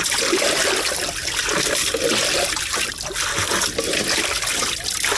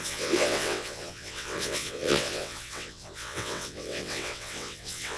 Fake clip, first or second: second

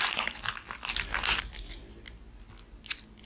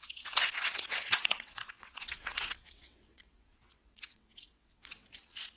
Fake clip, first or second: second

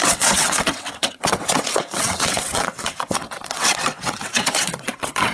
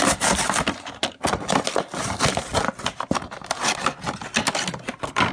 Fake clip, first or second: first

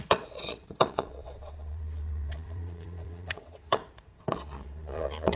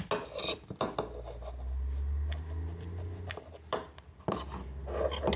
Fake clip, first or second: first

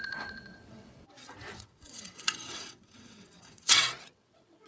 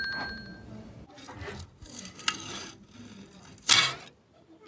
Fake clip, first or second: first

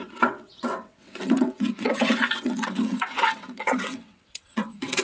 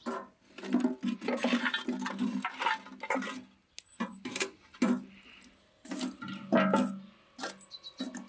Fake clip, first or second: first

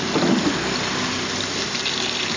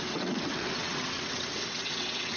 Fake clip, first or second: second